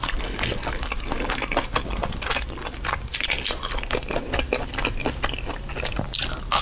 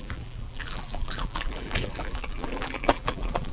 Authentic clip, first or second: first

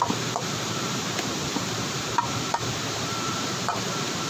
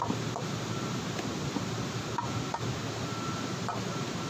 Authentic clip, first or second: second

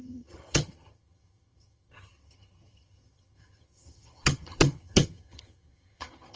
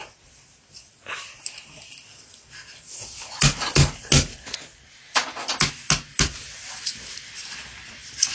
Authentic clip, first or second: second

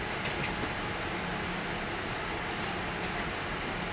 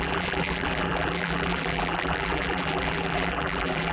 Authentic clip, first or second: first